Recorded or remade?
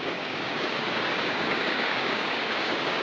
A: remade